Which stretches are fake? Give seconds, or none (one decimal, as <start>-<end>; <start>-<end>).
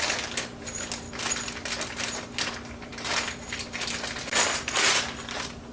none